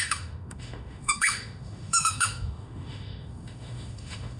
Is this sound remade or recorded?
remade